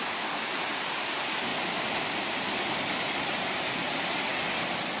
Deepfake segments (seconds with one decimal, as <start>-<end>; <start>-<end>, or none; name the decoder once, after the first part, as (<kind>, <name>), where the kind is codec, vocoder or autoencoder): 0.0-1.5 (vocoder, BigVGAN v2); 3.5-4.3